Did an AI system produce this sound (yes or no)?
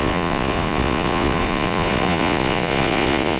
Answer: yes